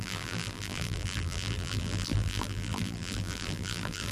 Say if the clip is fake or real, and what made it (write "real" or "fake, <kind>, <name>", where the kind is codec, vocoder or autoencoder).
fake, vocoder, BigVGAN v2